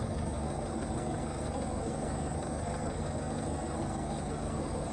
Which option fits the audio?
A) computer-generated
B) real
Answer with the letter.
A